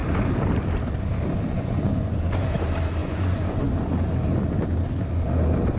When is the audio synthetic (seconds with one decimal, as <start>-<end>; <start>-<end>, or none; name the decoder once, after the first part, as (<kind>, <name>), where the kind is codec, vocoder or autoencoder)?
1.5-2.2 (vocoder, Vocos); 3.0-3.7